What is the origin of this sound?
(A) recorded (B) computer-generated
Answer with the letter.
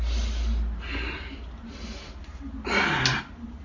A